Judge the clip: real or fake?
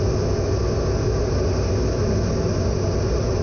real